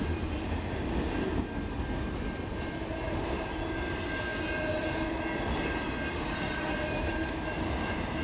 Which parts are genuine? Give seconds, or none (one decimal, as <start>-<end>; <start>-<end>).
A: 0.0-8.2